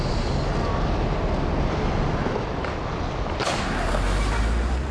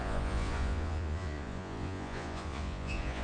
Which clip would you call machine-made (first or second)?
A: second